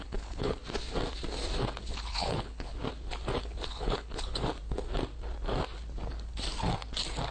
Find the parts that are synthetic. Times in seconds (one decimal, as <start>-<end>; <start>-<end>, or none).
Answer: 0.0-0.6; 1.8-2.7; 3.4-4.5